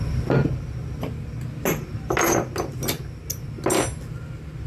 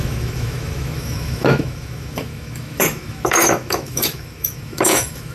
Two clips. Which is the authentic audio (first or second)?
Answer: first